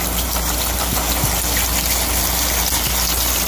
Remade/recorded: recorded